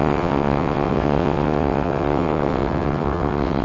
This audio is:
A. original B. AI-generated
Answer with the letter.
B